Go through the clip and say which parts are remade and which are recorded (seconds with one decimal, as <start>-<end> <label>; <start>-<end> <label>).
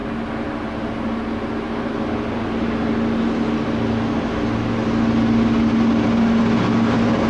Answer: 0.0-7.3 recorded